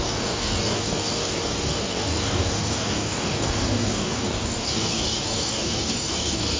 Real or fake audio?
fake